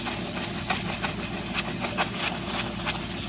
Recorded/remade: recorded